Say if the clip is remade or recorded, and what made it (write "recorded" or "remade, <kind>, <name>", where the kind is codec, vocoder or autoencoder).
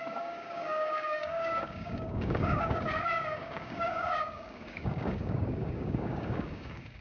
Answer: remade, codec, DAC